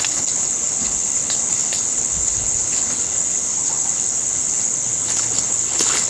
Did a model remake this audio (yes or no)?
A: yes